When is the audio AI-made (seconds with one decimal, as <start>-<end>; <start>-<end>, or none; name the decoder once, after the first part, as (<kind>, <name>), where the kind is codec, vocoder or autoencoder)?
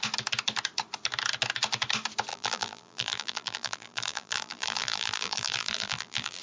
2.3-6.4 (vocoder, BigVGAN v2)